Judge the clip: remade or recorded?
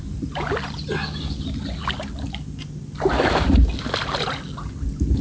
recorded